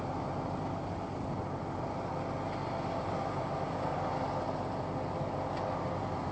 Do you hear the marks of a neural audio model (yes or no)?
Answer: no